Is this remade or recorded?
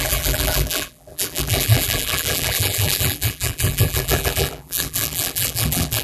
remade